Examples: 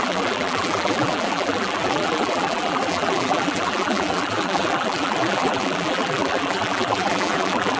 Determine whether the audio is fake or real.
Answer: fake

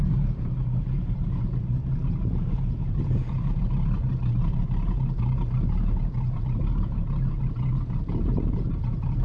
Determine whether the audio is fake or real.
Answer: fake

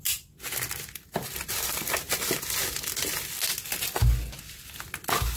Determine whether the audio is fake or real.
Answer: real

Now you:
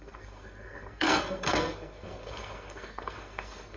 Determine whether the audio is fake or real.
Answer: fake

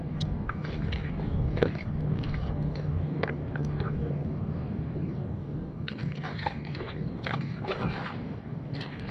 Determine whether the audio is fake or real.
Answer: fake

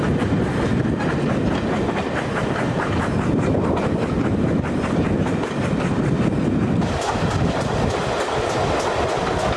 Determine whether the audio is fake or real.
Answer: real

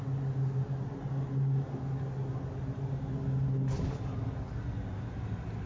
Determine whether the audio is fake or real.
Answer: real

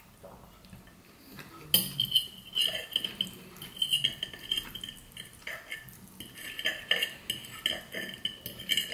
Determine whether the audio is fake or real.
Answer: real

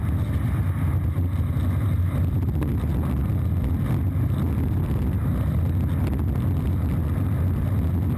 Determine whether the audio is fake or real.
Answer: real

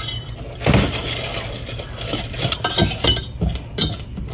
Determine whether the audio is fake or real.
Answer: real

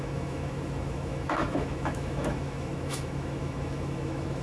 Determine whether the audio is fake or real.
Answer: fake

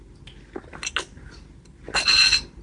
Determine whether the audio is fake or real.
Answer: real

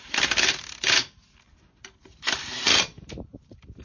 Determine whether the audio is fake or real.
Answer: fake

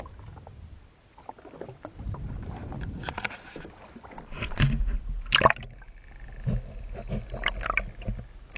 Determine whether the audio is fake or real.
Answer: real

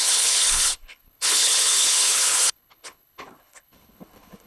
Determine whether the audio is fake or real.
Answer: fake